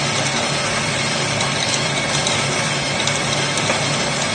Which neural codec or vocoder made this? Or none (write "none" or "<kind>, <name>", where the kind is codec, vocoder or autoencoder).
none